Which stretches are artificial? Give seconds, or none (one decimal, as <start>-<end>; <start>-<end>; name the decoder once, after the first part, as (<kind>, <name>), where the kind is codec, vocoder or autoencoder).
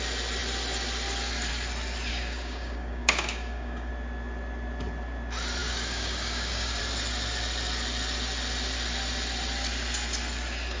2.1-3.9 (codec, DAC); 5.6-6.8